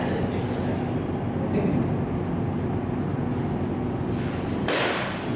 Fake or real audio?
real